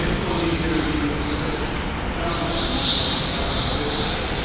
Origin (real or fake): fake